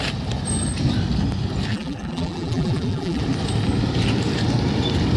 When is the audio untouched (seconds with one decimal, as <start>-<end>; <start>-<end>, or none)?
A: 0.0-1.7; 3.2-5.2